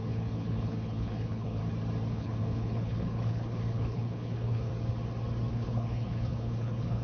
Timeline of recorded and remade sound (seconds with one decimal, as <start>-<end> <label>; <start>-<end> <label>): 0.0-1.6 remade; 1.6-2.1 recorded; 2.1-4.7 remade; 4.7-5.5 recorded; 5.5-7.0 remade